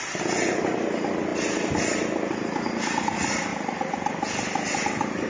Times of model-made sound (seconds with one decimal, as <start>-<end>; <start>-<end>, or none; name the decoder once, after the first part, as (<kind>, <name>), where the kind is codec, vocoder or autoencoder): 3.5-4.1 (vocoder, BigVGAN v2)